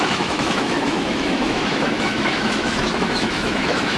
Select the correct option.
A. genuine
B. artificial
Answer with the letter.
B